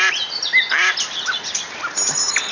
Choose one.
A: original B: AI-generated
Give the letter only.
A